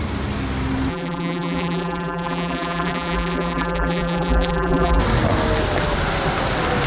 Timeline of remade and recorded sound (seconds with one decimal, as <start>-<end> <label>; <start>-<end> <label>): 0.0-0.9 recorded; 0.9-5.0 remade; 5.0-6.9 recorded